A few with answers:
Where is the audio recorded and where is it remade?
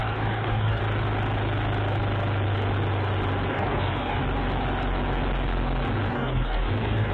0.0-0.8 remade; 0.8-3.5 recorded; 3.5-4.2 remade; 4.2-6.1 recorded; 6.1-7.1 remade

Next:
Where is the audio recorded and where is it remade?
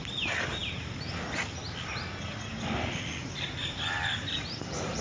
0.0-5.0 recorded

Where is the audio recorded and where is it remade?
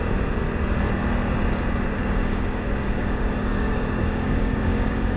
0.0-2.0 recorded; 2.0-5.2 remade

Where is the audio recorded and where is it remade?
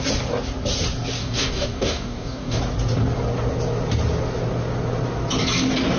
0.0-1.2 recorded; 1.2-2.6 remade; 2.6-6.0 recorded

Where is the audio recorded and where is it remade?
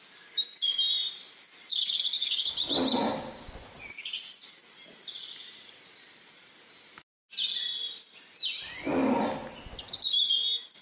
0.0-10.8 recorded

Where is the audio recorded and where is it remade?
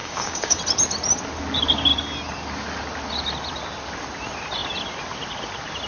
0.0-0.6 remade; 0.6-5.9 recorded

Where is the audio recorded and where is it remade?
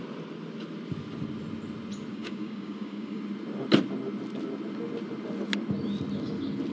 0.0-2.1 recorded; 2.1-3.2 remade; 3.2-6.7 recorded